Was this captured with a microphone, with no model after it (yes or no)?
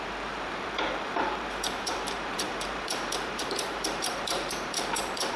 no